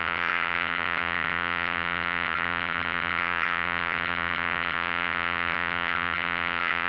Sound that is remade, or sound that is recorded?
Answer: remade